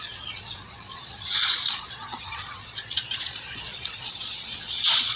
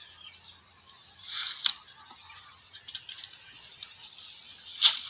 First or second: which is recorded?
second